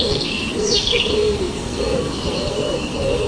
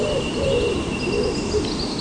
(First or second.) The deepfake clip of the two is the first